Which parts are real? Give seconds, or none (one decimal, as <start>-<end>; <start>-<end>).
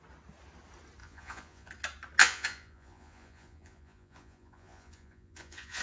0.0-1.0; 1.7-2.2